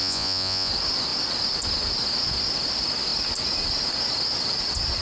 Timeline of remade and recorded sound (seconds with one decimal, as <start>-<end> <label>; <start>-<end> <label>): 0.0-0.7 remade; 0.7-5.0 recorded